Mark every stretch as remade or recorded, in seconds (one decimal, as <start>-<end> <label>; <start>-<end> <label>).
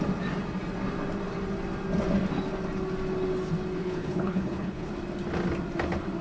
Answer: 0.0-3.8 recorded; 3.8-4.9 remade; 4.9-6.2 recorded